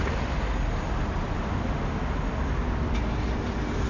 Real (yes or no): yes